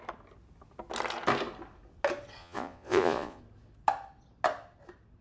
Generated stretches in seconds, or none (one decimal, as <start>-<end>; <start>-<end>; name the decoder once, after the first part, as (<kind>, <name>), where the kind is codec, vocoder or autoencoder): 2.4-3.4 (vocoder, Vocos)